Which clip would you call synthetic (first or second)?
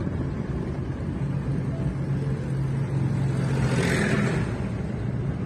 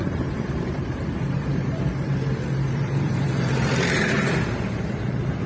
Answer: second